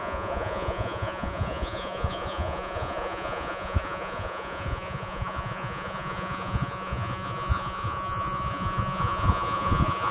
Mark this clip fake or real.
fake